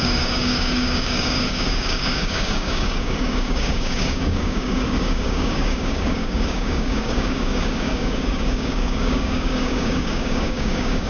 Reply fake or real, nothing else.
fake